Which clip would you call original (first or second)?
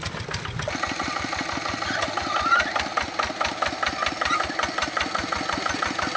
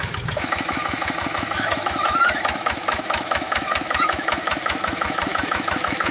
first